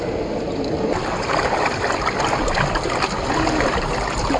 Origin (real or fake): real